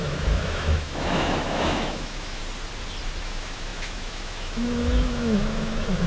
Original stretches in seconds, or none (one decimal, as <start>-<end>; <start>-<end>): 2.4-3.2